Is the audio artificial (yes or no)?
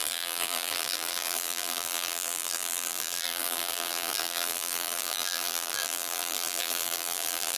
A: yes